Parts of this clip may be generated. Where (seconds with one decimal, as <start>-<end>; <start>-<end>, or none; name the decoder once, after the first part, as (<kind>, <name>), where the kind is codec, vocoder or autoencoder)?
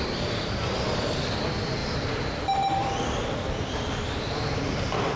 none